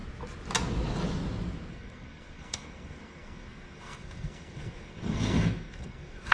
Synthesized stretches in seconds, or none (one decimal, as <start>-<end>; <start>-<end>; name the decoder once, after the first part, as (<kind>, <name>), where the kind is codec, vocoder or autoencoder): 1.7-6.3 (codec, SNAC)